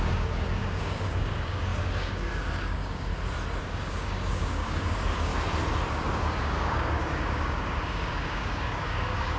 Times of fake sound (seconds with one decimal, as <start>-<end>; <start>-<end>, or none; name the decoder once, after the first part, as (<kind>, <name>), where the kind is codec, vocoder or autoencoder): 0.0-3.1 (codec, DAC); 3.6-5.3; 5.9-9.4